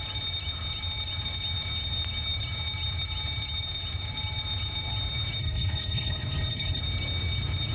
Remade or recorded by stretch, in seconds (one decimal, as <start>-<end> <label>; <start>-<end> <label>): 0.0-5.4 recorded; 5.4-6.8 remade; 6.8-7.7 recorded